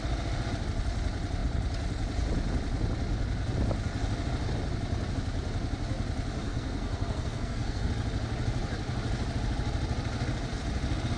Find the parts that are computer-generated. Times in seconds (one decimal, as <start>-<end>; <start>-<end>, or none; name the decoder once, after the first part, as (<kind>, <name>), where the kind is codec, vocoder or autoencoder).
6.4-7.9 (codec, SNAC)